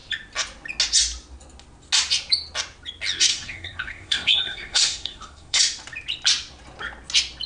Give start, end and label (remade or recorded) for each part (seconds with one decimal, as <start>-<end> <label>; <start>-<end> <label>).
0.0-3.3 recorded; 3.3-5.6 remade; 5.6-7.5 recorded